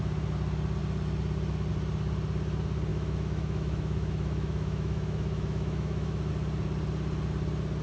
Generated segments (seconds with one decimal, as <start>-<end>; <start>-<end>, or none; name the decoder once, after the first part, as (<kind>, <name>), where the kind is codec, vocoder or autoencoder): 2.9-6.3 (autoencoder, DAC-VAE)